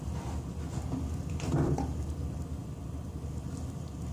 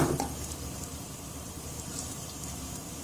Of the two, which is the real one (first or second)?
first